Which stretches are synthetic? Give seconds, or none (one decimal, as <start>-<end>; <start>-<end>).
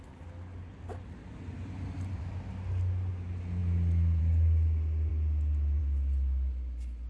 none